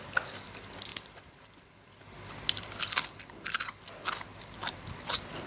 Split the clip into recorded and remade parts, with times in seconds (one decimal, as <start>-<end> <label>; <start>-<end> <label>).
0.0-0.9 recorded; 0.9-1.5 remade; 1.5-4.3 recorded; 4.3-4.9 remade; 4.9-5.5 recorded